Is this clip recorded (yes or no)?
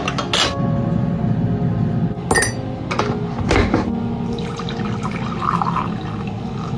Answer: yes